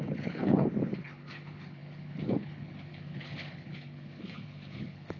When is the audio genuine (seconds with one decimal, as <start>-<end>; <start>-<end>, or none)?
none